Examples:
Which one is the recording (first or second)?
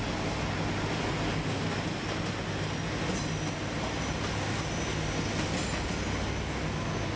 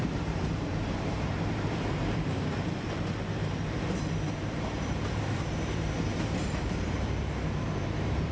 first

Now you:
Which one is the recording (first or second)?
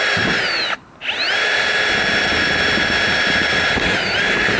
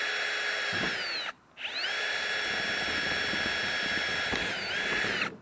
second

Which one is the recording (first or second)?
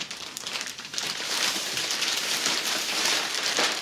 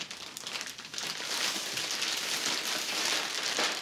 second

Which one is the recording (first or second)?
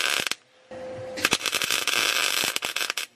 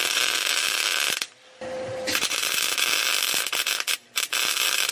first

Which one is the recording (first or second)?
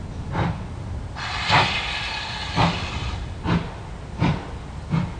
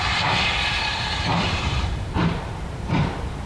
first